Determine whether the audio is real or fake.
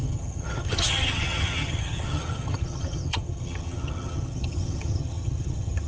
fake